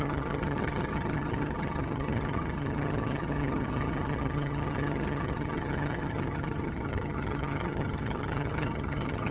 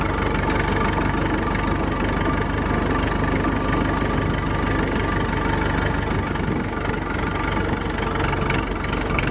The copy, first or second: first